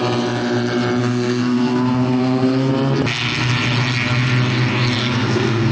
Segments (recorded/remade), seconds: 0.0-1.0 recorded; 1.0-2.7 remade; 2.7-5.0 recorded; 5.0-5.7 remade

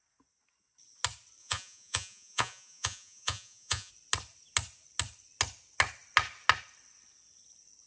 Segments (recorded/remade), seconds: 0.0-1.4 recorded; 1.4-3.9 remade; 3.9-7.9 recorded

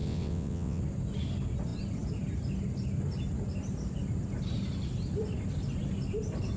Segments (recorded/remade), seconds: 0.0-0.8 remade; 0.8-6.6 recorded

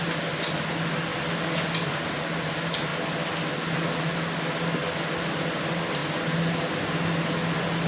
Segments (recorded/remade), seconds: 0.0-7.9 recorded

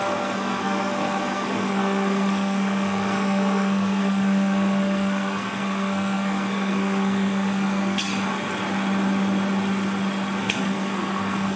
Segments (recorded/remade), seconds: 0.0-8.1 remade; 8.1-10.4 recorded; 10.4-11.6 remade

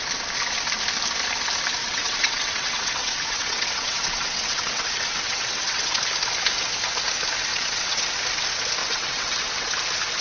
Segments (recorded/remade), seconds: 0.0-1.8 recorded; 1.8-6.0 remade; 6.0-7.5 recorded; 7.5-8.1 remade; 8.1-8.8 recorded; 8.8-9.7 remade; 9.7-10.2 recorded

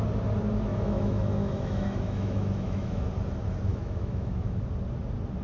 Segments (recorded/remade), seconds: 0.0-0.7 recorded; 0.7-3.1 remade; 3.1-3.7 recorded; 3.7-4.6 remade; 4.6-5.4 recorded

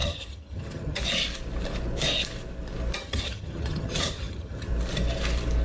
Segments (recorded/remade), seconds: 0.0-1.0 remade; 1.0-3.0 recorded; 3.0-4.7 remade; 4.7-5.6 recorded